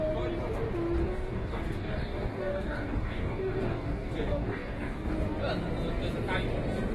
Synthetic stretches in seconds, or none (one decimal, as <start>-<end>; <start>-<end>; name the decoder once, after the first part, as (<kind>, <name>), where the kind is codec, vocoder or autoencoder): 1.0-5.1 (codec, DAC)